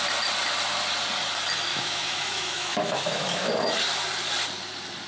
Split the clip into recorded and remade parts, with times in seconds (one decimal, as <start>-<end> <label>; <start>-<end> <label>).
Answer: 0.0-1.7 recorded; 1.7-3.6 remade; 3.6-5.1 recorded